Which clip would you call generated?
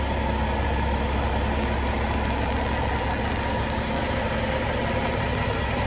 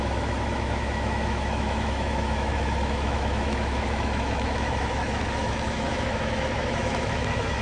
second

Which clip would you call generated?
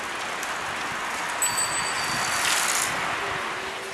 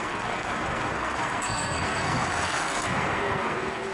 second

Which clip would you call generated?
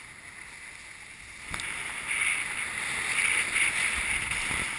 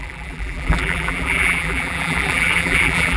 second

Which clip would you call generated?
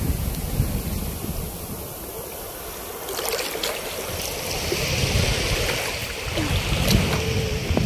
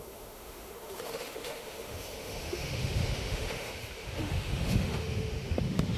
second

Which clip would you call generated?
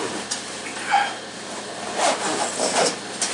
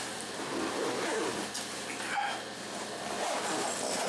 first